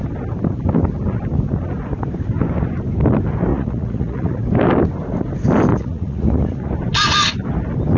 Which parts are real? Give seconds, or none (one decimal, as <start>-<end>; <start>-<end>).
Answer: 0.0-3.5; 4.4-5.7; 6.7-8.0